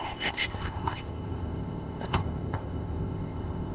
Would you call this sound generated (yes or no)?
yes